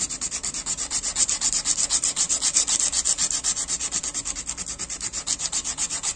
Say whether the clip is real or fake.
real